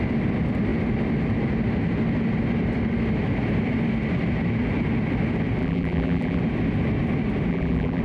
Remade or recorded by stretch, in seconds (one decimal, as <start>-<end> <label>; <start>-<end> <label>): 0.0-5.6 recorded; 5.6-6.4 remade; 6.4-7.5 recorded; 7.5-8.0 remade